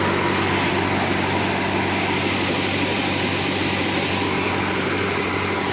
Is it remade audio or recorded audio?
recorded